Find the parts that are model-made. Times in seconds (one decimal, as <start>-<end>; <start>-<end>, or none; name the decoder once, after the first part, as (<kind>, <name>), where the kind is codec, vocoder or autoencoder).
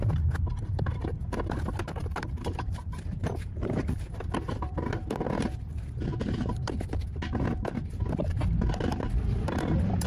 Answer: 2.0-4.2 (vocoder, BigVGAN v2)